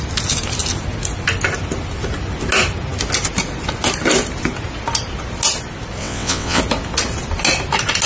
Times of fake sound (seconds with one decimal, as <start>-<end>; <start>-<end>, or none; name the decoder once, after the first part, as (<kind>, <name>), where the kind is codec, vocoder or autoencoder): 6.0-6.6 (vocoder, WaveNeXt)